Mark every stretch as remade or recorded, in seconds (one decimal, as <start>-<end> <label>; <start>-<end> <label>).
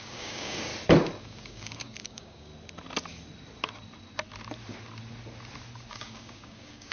0.0-0.7 remade; 0.7-1.2 recorded; 1.2-2.5 remade; 2.5-5.9 recorded; 5.9-6.9 remade